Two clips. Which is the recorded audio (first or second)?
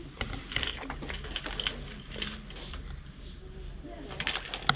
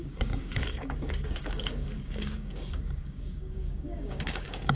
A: first